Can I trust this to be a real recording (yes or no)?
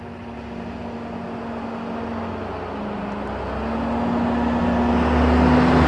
yes